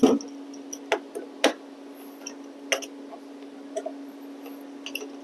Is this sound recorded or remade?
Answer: recorded